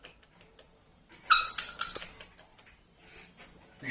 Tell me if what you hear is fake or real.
real